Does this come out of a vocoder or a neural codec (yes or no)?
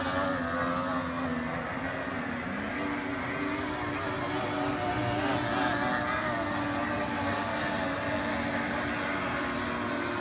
no